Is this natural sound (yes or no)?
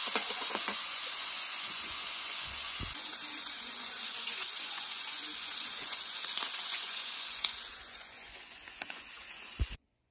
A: no